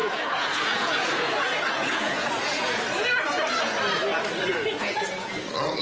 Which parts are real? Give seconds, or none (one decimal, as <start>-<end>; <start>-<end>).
2.8-4.5; 5.1-5.8